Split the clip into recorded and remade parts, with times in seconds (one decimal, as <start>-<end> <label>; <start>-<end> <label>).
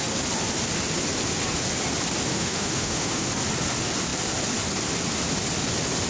0.0-2.3 recorded; 2.3-3.3 remade; 3.3-6.1 recorded